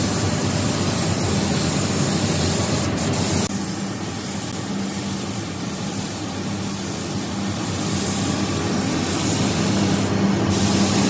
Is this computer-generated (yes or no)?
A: no